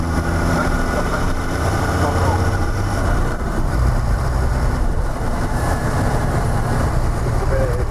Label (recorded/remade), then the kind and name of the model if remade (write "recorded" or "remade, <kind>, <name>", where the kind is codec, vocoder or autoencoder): remade, vocoder, BigVGAN v2